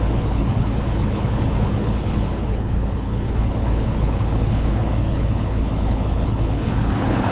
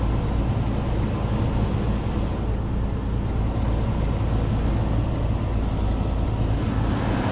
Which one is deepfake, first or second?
first